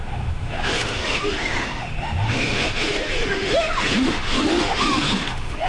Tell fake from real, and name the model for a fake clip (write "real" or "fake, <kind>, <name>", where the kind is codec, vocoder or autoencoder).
fake, autoencoder, DAC-VAE